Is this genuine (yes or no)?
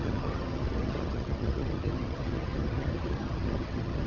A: no